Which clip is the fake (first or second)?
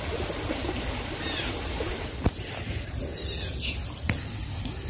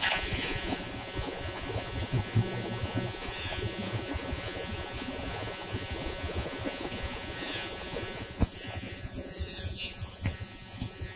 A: second